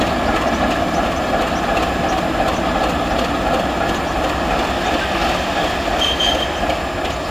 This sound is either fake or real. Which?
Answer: real